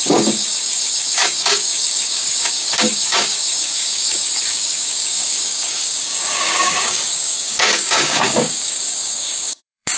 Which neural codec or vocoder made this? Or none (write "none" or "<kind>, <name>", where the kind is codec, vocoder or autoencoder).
codec, DAC